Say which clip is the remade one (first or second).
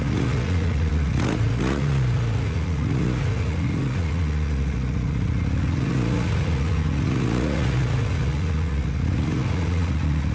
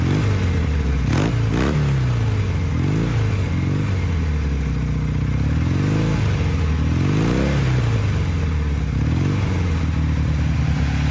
first